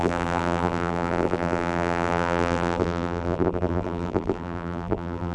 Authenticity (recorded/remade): remade